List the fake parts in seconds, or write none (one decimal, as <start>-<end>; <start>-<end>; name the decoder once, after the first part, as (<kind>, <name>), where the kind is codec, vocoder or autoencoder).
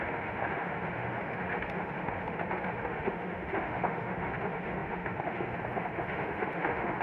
0.0-7.0 (autoencoder, DAC-VAE)